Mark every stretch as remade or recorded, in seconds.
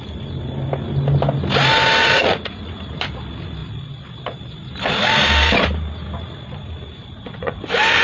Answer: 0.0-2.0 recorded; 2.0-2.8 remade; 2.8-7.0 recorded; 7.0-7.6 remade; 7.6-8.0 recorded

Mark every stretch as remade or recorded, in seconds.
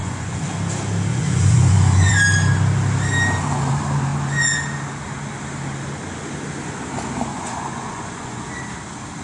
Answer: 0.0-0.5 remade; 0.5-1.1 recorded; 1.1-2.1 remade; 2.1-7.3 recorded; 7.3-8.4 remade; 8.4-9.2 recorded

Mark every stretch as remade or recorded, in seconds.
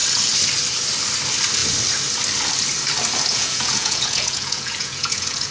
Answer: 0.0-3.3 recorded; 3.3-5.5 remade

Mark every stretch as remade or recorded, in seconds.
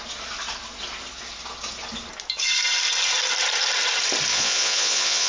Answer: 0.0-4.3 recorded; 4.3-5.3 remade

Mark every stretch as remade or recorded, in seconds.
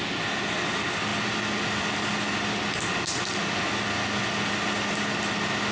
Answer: 0.0-5.7 recorded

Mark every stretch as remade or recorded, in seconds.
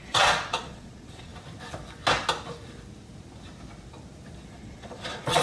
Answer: 0.0-1.3 remade; 1.3-4.5 recorded; 4.5-5.4 remade